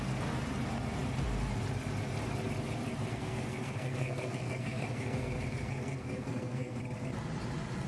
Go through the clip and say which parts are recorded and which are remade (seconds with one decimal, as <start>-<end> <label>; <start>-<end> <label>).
0.0-3.1 recorded; 3.1-6.8 remade; 6.8-7.9 recorded